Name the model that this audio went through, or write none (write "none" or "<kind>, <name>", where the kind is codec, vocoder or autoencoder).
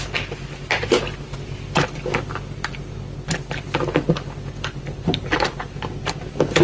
none